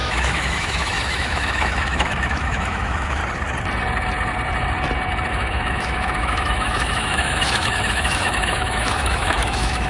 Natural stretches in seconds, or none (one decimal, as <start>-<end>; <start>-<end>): 3.2-5.3